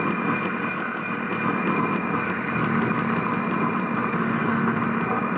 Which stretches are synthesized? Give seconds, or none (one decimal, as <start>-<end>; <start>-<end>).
4.1-4.8